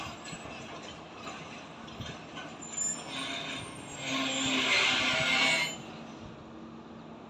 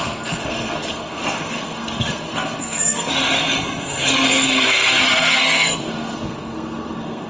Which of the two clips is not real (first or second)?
second